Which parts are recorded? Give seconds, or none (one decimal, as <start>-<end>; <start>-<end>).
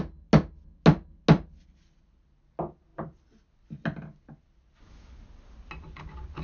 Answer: 0.0-6.4